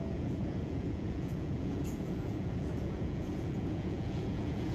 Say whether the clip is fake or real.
fake